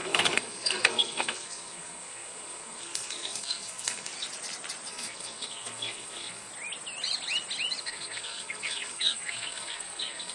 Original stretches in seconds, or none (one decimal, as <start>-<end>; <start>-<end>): 4.1-4.9; 6.5-7.8